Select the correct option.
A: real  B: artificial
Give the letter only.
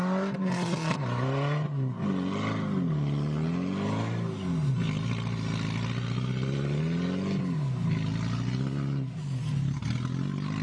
A